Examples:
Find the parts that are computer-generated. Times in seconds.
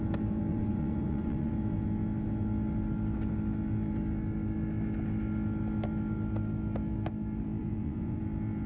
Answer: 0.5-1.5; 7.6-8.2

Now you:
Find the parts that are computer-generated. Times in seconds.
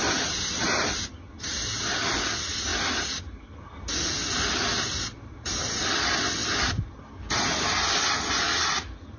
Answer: none